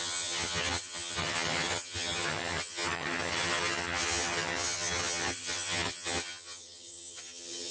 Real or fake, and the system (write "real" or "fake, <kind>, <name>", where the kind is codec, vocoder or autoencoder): fake, vocoder, HiFi-GAN